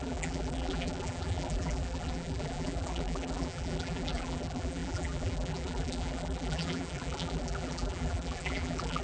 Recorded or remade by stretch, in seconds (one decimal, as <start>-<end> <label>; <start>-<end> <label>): 0.0-9.0 remade